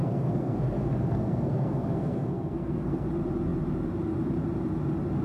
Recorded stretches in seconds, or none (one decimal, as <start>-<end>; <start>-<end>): 3.1-5.2